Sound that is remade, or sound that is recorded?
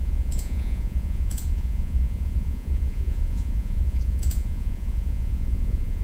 remade